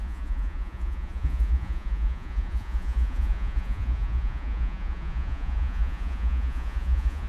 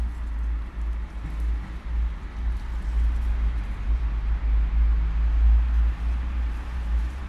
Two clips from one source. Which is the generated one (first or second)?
first